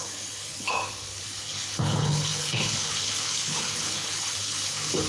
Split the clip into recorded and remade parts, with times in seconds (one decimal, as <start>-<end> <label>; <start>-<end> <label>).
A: 0.0-5.1 remade